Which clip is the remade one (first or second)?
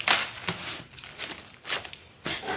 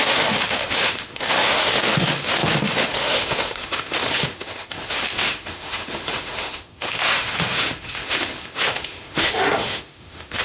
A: second